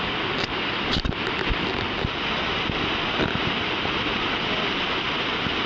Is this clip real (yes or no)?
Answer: yes